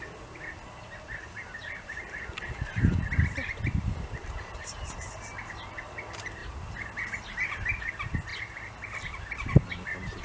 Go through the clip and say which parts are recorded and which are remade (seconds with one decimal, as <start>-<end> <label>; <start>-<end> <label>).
0.0-10.2 recorded